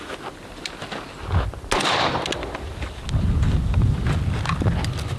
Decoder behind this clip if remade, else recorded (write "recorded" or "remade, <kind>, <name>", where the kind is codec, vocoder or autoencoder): recorded